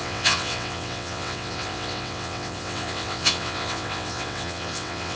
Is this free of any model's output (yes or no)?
no